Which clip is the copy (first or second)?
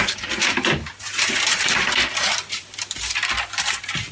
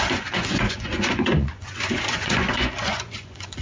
second